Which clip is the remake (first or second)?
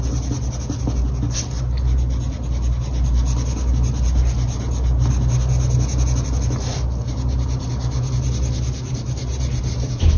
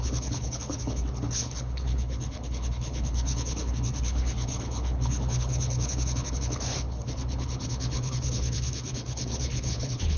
second